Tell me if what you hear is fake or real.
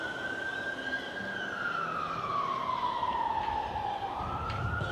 real